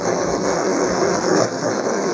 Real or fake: fake